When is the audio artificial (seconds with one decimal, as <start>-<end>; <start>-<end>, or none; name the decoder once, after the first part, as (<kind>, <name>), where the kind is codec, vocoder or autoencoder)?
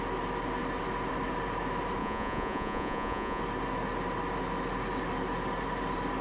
2.0-3.4 (vocoder, Vocos)